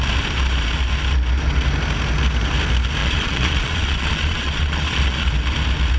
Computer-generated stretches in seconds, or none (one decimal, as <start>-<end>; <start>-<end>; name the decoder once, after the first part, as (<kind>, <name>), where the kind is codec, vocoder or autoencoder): 3.0-5.3 (vocoder, Vocos)